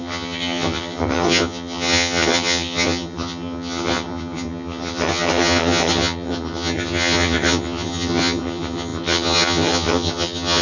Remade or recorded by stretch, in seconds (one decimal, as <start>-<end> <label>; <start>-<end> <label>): 0.0-10.6 remade